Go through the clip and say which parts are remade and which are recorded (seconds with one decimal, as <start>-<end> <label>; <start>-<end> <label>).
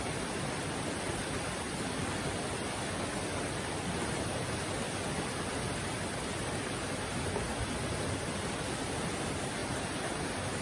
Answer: 0.0-9.6 recorded; 9.6-10.2 remade; 10.2-10.6 recorded